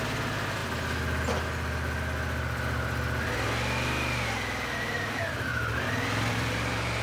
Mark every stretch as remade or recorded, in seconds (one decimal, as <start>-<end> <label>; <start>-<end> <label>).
0.0-0.6 remade; 0.6-4.8 recorded; 4.8-5.5 remade; 5.5-6.3 recorded; 6.3-7.0 remade